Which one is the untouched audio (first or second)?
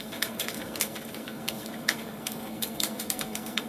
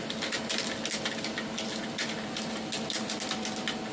second